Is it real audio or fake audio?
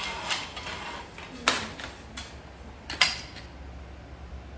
real